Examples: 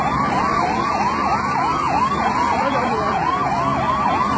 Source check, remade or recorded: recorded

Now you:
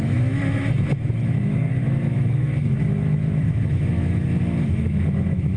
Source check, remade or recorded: remade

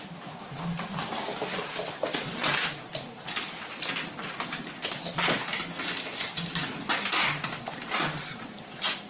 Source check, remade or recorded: recorded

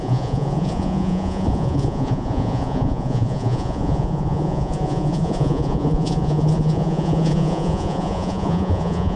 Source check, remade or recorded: remade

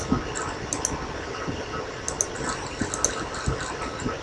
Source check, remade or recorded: recorded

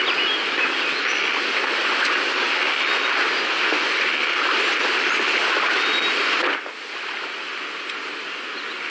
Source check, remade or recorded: recorded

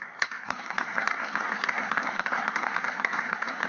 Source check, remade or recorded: remade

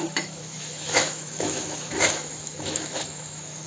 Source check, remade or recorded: remade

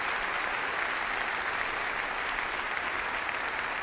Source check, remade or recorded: recorded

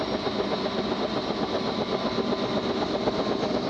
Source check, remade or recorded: recorded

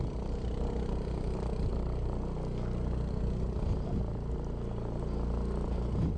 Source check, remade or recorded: recorded